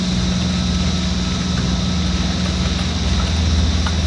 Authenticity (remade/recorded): recorded